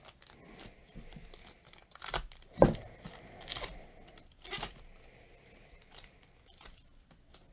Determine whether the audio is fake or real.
real